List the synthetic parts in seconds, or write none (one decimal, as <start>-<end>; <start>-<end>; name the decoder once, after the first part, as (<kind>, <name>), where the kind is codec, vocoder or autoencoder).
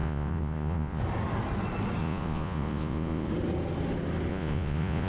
0.0-1.0 (vocoder, Vocos); 2.0-3.3; 4.3-5.1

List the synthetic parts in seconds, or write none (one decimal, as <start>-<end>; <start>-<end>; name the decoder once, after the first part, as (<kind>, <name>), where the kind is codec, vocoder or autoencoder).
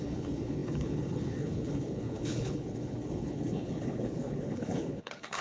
0.0-5.4 (codec, HILCodec)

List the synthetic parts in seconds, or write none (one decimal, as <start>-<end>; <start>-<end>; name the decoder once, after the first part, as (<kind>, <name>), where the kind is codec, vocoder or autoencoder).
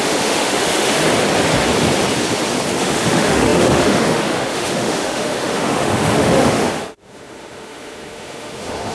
0.0-1.0 (autoencoder, DAC-VAE); 2.8-8.9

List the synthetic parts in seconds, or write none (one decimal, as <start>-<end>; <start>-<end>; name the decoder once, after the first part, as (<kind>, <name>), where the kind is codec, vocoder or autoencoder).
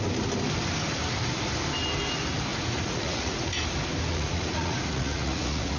2.5-3.5 (vocoder, Vocos); 4.1-5.8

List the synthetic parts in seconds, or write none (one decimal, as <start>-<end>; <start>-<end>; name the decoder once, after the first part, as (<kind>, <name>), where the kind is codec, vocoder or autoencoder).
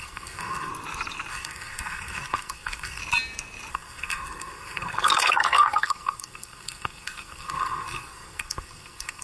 0.0-0.7 (codec, SNAC); 1.3-3.0; 3.7-9.2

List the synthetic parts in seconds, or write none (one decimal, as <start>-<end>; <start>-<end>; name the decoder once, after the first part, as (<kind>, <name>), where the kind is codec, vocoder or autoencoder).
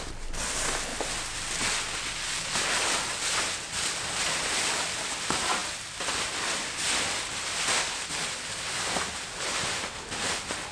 0.9-4.6 (vocoder, BigVGAN v2)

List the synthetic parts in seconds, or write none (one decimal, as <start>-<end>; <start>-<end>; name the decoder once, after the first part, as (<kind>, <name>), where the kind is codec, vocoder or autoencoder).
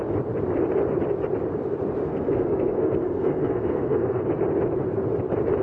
2.0-4.2 (codec, SNAC)